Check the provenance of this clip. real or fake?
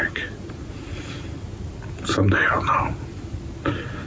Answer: real